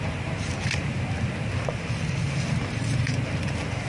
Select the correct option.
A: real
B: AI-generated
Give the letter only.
B